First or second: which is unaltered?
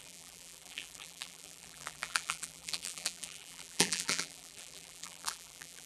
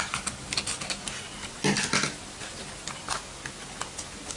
second